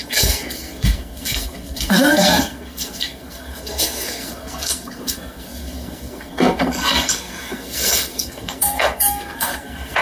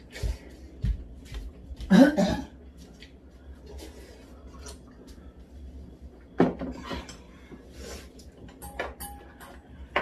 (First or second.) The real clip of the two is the second